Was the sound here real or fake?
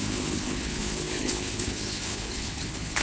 fake